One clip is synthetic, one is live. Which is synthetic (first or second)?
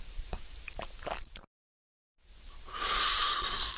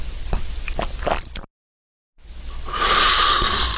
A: first